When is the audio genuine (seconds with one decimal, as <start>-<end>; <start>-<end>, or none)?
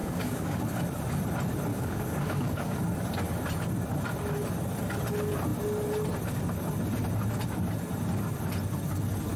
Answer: 0.6-1.7; 2.8-9.4